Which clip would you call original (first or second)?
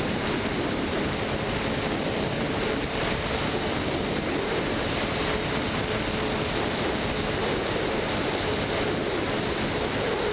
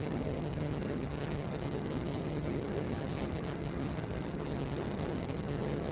first